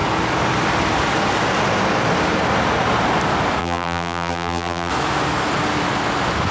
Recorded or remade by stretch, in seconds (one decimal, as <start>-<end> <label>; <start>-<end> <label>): 0.0-3.6 recorded; 3.6-4.9 remade; 4.9-6.5 recorded